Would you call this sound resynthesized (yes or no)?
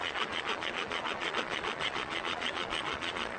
yes